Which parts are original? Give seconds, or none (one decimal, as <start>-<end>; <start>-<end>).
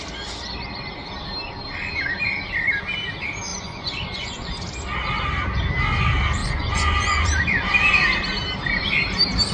0.0-3.5; 4.5-6.4; 7.3-9.5